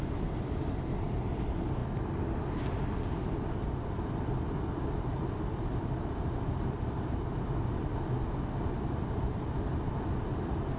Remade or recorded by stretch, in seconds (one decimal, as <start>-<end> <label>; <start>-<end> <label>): 0.0-10.8 recorded